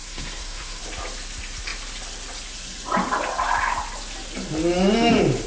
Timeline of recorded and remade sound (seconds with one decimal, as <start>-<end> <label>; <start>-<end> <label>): 0.0-0.8 remade; 0.8-5.5 recorded